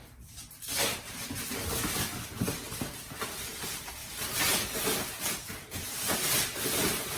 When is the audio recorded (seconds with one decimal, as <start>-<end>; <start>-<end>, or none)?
0.0-7.2